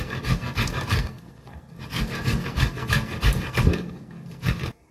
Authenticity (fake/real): fake